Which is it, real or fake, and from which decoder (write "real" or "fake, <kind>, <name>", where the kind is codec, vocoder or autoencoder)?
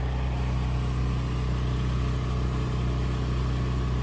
real